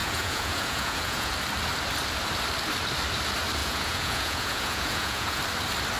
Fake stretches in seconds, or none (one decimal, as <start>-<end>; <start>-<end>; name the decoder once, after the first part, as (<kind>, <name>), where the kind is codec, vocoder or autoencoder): 0.0-1.3 (vocoder, Vocos); 3.6-5.4